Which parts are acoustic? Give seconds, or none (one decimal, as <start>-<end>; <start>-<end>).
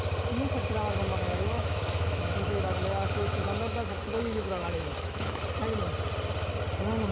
0.0-1.1; 5.4-7.1